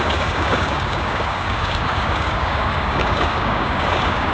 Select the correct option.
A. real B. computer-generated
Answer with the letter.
B